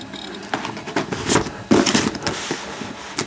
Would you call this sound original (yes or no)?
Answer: yes